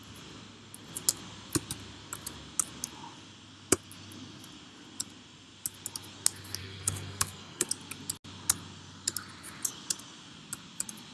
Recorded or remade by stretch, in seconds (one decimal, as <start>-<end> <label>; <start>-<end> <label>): 0.0-6.6 recorded; 6.6-7.7 remade; 7.7-11.1 recorded